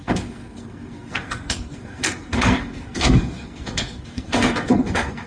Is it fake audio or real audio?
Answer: fake